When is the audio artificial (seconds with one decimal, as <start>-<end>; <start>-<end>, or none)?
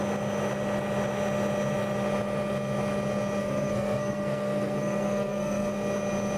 3.4-5.7